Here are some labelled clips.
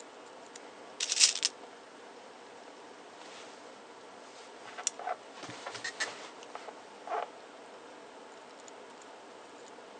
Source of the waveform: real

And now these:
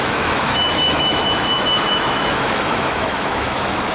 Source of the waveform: fake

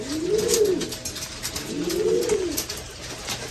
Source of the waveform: real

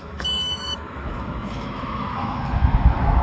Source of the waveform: fake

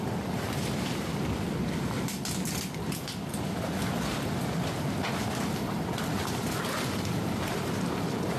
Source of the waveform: real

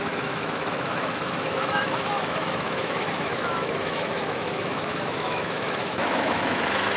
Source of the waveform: fake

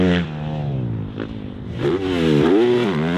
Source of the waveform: real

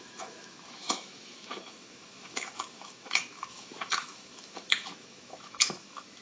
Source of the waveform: fake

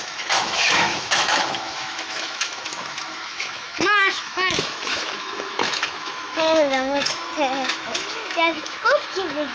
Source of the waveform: fake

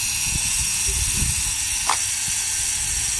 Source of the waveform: real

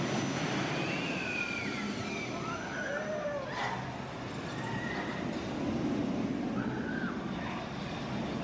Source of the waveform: real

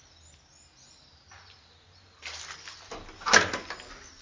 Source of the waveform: real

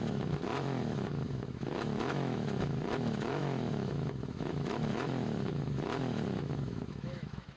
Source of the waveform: fake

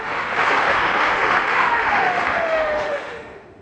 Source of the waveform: fake